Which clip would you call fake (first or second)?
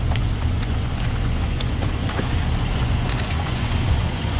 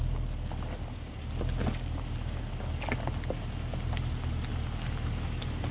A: first